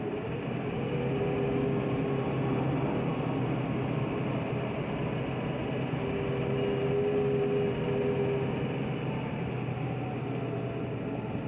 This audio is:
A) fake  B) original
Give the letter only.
B